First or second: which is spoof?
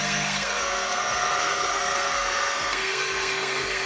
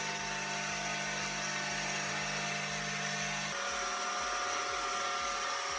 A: first